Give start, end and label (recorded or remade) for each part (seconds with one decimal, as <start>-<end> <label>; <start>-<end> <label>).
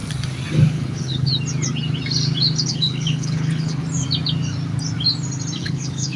0.0-0.7 recorded; 0.7-1.3 remade; 1.3-2.7 recorded; 2.7-3.8 remade; 3.8-5.6 recorded; 5.6-6.2 remade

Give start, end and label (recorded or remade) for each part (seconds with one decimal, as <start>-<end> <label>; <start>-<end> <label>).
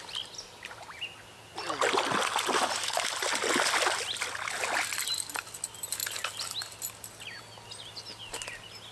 0.0-8.9 recorded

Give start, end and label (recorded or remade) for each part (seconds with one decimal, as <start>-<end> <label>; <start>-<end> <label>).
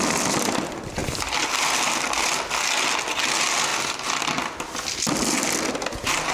0.0-6.3 recorded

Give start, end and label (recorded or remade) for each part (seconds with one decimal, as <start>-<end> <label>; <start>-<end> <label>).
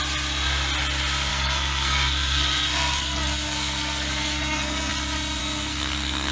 0.0-1.3 recorded; 1.3-4.9 remade; 4.9-5.4 recorded; 5.4-6.3 remade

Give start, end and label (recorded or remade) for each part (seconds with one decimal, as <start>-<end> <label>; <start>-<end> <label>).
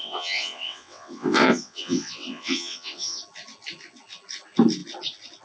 0.0-3.2 remade; 3.2-5.4 recorded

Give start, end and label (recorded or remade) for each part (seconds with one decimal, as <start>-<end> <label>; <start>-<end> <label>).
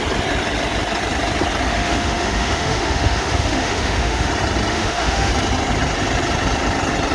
0.0-1.7 recorded; 1.7-4.3 remade; 4.3-4.7 recorded; 4.7-5.3 remade; 5.3-7.1 recorded